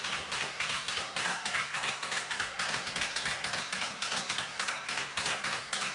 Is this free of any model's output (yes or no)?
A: no